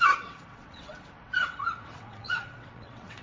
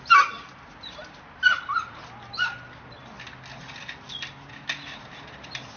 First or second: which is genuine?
second